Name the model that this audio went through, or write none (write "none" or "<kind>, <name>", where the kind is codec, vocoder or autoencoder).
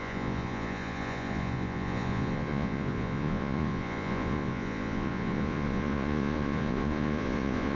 vocoder, Vocos